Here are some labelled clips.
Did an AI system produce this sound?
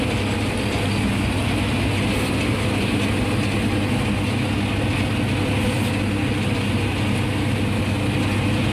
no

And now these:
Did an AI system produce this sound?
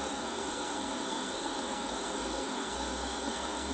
yes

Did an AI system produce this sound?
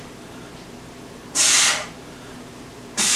yes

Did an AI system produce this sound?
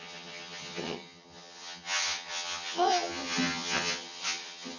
yes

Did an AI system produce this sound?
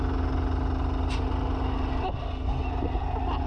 no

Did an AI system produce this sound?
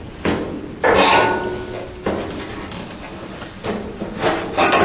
no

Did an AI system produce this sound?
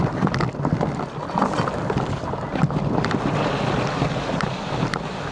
no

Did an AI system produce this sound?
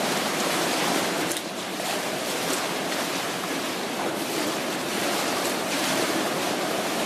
yes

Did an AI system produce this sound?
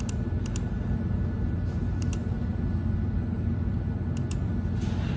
no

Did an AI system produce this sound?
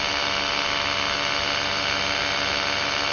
no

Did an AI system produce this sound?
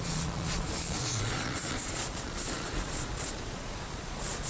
yes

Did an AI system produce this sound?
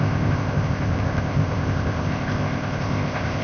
yes